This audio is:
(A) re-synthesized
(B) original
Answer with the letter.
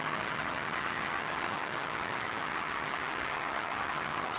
A